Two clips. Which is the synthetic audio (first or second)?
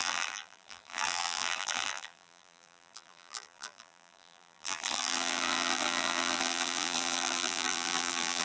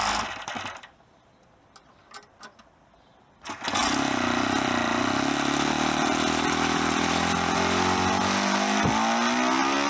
first